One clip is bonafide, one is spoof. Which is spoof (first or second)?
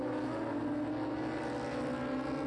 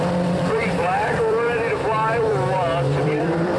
second